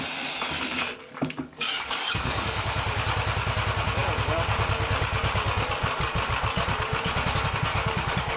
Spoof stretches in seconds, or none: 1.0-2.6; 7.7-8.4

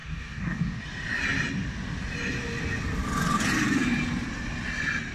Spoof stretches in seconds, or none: 0.0-0.8

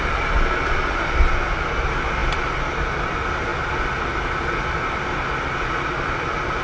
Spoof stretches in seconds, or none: none

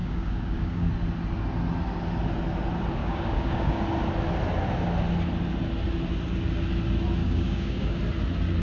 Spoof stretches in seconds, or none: 0.0-0.9; 3.0-3.8; 7.2-8.0

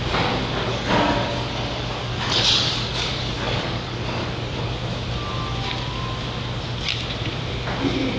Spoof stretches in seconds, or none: 0.7-4.6

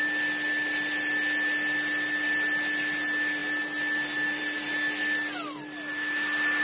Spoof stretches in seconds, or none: none

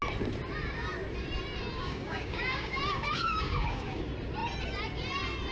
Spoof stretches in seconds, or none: 1.7-4.0

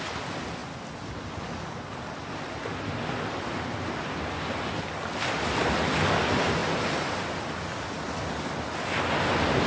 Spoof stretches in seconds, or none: none